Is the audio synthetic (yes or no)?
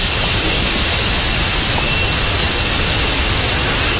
no